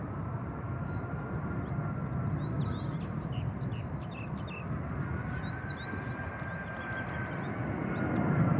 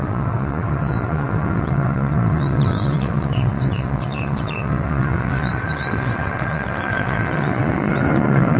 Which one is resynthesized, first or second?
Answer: second